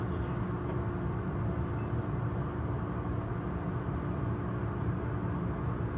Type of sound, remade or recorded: recorded